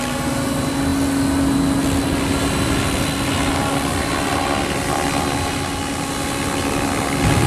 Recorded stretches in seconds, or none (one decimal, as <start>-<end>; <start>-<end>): 0.0-7.5